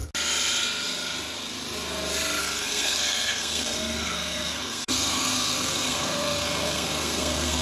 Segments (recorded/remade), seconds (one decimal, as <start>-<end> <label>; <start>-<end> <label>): 0.0-2.4 recorded; 2.4-7.6 remade